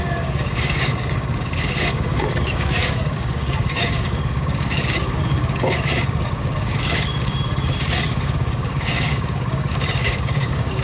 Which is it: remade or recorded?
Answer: remade